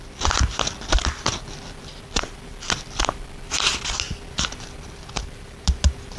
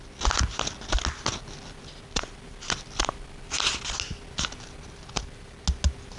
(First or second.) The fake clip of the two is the first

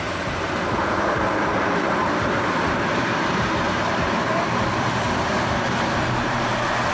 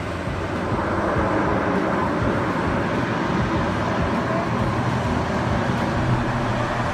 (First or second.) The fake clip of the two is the first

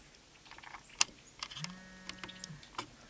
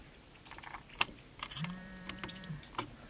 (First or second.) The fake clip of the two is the second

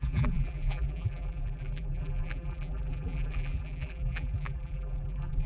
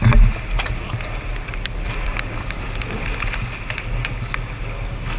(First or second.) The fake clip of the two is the first